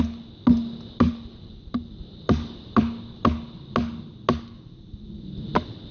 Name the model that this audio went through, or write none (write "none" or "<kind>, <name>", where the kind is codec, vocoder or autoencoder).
none